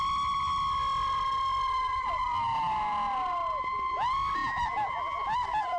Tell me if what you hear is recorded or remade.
recorded